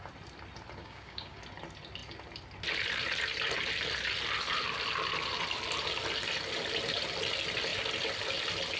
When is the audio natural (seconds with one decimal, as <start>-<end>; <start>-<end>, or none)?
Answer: 0.0-0.8; 1.4-8.8